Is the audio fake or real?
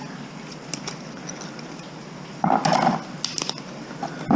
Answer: real